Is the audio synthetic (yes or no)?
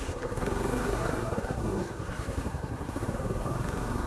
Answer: yes